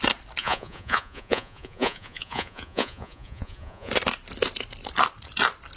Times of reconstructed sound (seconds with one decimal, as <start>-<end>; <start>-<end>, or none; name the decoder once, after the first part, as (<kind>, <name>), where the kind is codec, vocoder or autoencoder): 0.4-3.9 (vocoder, Vocos)